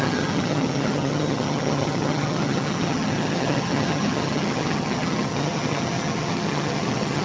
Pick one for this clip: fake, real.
fake